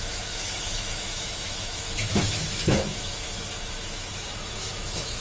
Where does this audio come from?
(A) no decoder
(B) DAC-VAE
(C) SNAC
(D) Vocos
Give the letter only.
B